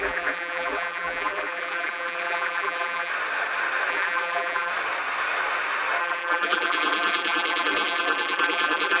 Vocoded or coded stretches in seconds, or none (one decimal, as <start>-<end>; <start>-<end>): 0.0-3.1; 3.9-4.7; 6.0-9.0